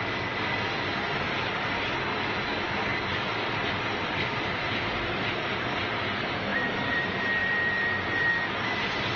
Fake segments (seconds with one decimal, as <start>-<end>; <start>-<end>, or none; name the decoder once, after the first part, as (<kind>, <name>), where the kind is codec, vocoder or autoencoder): 2.9-5.9 (vocoder, BigVGAN v2); 6.5-7.0; 7.4-8.3